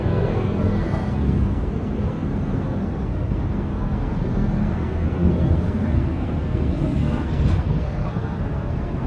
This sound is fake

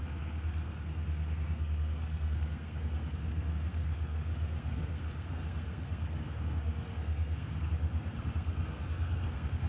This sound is fake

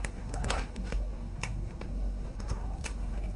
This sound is fake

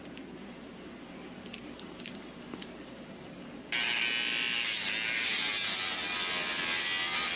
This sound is real